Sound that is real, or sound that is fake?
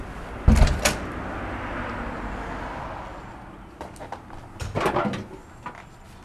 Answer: real